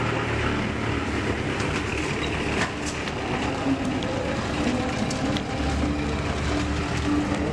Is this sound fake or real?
real